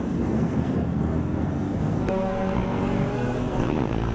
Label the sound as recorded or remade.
remade